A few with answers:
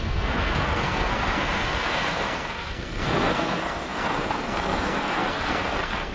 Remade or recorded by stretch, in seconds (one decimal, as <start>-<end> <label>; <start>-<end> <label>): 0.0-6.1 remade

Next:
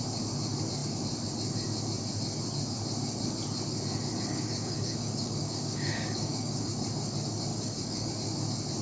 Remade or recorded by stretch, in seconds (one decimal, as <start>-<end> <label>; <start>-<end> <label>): 0.0-4.3 recorded; 4.3-6.7 remade; 6.7-7.5 recorded; 7.5-8.1 remade; 8.1-8.8 recorded

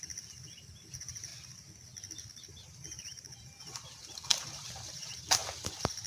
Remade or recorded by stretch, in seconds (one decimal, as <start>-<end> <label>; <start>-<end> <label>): 0.0-1.3 remade; 1.3-2.5 recorded; 2.5-6.1 remade

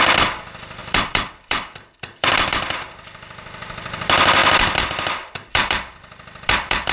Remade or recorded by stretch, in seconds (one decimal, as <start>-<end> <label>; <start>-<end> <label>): 0.0-0.8 recorded; 0.8-2.6 remade; 2.6-4.4 recorded; 4.4-6.9 remade

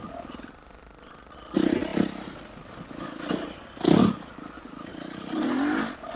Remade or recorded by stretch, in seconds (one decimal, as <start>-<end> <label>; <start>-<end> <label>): 0.0-6.2 recorded

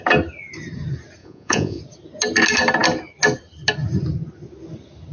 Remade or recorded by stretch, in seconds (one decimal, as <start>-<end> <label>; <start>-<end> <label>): 0.0-1.2 recorded; 1.2-1.8 remade; 1.8-5.1 recorded

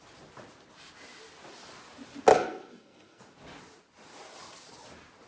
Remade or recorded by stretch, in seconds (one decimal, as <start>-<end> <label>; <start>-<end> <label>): 0.0-2.3 recorded; 2.3-3.2 remade; 3.2-5.3 recorded